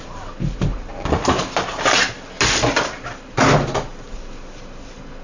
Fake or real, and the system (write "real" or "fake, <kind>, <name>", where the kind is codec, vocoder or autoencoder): real